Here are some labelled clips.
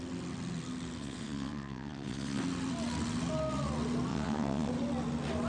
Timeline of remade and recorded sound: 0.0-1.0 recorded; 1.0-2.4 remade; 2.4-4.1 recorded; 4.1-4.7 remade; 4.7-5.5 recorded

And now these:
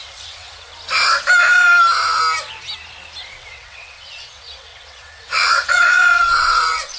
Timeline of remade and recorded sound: 0.0-0.7 remade; 0.7-3.4 recorded; 3.4-7.0 remade